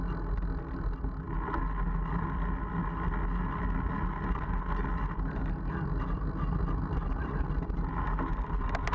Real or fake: real